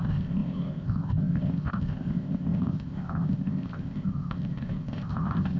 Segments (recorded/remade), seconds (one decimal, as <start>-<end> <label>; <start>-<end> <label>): 0.0-5.6 remade